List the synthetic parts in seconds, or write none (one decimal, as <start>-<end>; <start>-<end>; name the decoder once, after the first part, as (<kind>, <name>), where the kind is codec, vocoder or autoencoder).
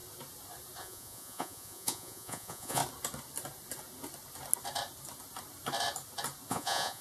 0.8-2.8 (vocoder, Vocos); 6.5-7.0